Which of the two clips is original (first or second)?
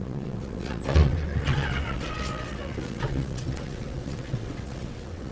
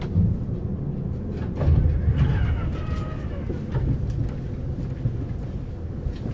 second